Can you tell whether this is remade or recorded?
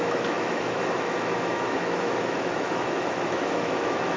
remade